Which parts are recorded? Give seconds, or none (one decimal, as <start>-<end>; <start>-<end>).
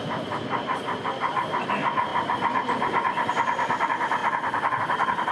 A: 0.0-5.3